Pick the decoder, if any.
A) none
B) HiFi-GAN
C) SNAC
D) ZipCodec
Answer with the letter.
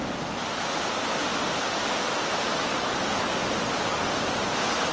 A